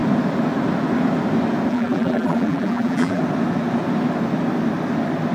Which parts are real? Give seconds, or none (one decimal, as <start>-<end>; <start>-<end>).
0.0-1.7; 3.2-5.3